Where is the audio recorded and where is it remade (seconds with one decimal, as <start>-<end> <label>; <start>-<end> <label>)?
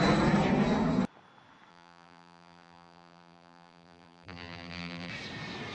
0.0-1.7 recorded; 1.7-5.1 remade; 5.1-5.7 recorded